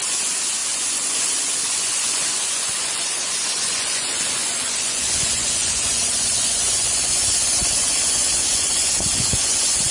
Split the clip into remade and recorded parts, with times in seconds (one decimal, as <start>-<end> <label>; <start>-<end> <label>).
0.0-9.9 remade